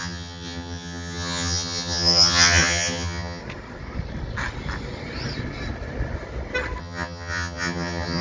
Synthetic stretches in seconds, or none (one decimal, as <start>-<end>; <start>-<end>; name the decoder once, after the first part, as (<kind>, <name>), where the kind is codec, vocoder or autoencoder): 0.0-3.4 (vocoder, HiFi-GAN); 6.8-8.2